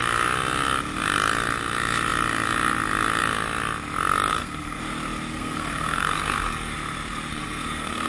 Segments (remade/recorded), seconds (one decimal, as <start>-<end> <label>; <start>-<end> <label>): 0.0-4.3 recorded; 4.3-4.8 remade; 4.8-5.3 recorded; 5.3-6.7 remade; 6.7-7.3 recorded; 7.3-8.1 remade